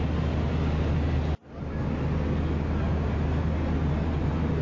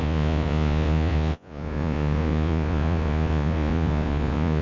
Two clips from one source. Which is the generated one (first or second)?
second